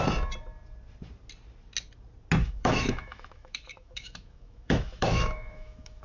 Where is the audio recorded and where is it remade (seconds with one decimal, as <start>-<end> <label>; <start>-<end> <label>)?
0.0-2.4 recorded; 2.4-6.0 remade